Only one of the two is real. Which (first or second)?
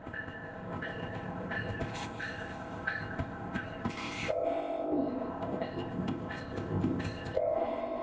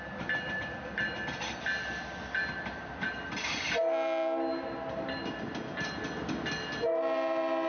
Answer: second